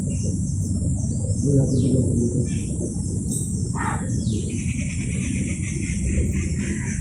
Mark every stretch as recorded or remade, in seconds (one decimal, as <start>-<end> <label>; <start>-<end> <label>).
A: 0.0-0.9 recorded; 0.9-3.1 remade; 3.1-3.6 recorded; 3.6-4.2 remade; 4.2-7.0 recorded